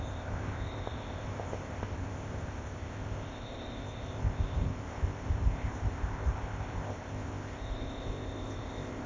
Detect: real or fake fake